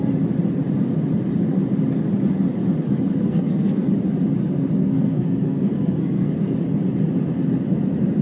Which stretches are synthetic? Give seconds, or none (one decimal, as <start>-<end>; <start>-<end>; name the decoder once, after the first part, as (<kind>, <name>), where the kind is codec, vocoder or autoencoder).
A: 3.1-3.9 (codec, SNAC); 4.8-6.6